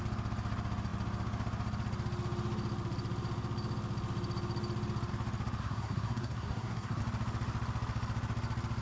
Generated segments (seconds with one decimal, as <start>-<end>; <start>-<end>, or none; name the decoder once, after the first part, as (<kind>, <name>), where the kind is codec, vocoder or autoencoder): 5.6-7.0 (codec, SNAC)